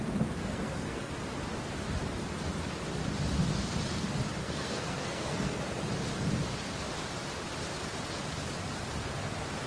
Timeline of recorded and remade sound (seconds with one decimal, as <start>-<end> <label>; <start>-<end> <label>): 0.0-0.4 recorded; 0.4-1.1 remade; 1.1-4.4 recorded; 4.4-5.6 remade; 5.6-9.7 recorded